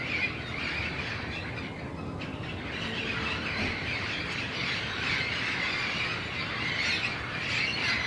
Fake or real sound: real